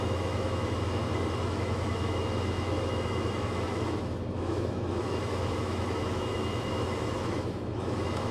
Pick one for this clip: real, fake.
fake